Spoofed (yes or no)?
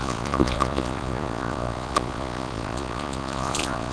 yes